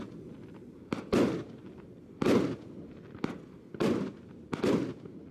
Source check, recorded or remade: recorded